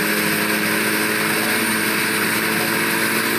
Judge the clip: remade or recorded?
recorded